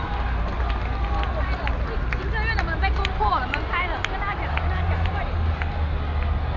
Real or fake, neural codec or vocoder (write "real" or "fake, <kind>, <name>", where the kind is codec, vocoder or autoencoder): real